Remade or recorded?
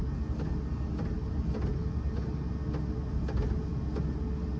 recorded